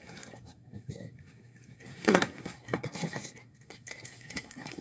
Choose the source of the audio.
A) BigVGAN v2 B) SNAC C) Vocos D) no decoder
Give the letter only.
B